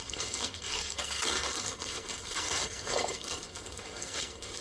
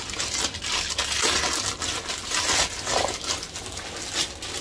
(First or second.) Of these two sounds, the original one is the second